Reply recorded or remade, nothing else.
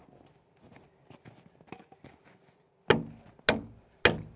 recorded